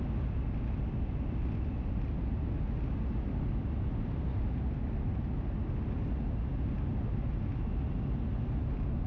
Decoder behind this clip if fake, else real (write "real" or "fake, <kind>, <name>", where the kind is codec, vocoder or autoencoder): real